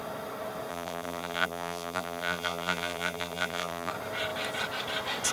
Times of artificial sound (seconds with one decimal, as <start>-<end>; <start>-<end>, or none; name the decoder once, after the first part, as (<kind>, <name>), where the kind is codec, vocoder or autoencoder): 0.7-3.9 (vocoder, BigVGAN v2)